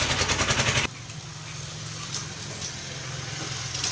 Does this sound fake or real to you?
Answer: real